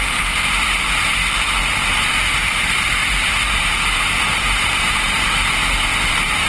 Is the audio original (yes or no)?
no